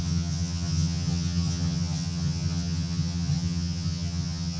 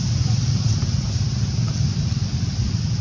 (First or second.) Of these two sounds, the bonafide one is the second